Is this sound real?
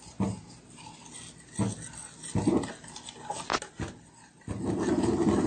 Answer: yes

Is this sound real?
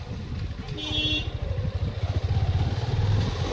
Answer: yes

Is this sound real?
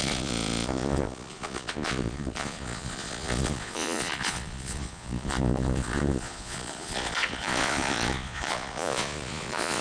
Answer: no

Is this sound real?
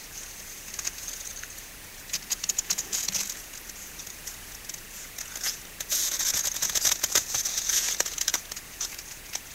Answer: no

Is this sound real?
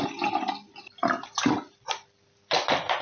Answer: yes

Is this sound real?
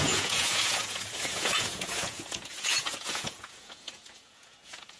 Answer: no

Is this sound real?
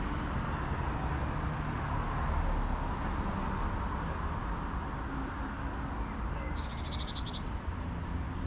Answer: yes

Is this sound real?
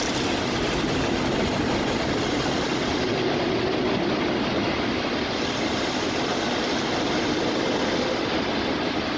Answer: yes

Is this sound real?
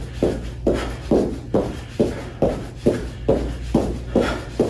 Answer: yes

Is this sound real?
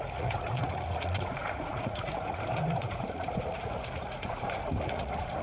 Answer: no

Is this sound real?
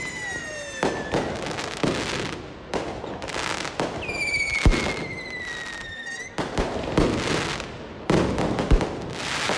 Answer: yes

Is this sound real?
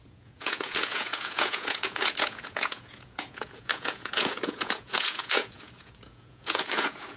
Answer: no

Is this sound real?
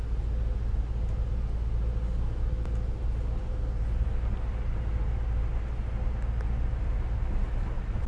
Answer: yes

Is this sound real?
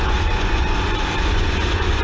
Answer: no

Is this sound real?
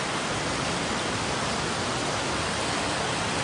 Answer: yes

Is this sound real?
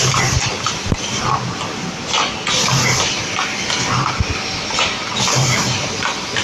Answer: yes